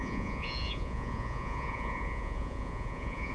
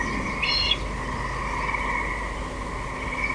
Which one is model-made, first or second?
first